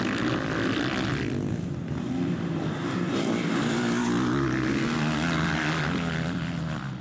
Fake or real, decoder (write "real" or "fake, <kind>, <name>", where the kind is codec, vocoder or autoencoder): real